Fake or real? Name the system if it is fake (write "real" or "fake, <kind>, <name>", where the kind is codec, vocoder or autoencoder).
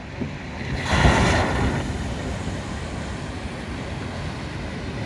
real